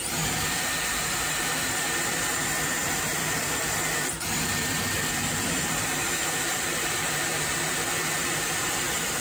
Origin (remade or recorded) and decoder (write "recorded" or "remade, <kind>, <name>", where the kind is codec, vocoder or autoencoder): remade, vocoder, BigVGAN v2